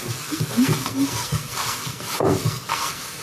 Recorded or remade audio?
remade